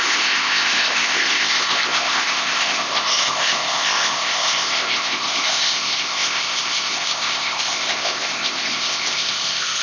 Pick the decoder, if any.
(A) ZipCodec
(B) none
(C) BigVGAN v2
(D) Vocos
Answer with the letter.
A